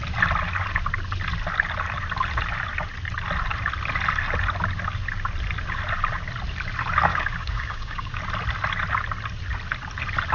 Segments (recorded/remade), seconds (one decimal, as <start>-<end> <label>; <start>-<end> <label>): 0.0-7.1 recorded; 7.1-8.2 remade; 8.2-10.3 recorded